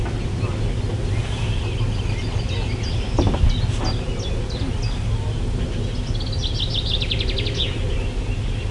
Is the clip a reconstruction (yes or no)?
no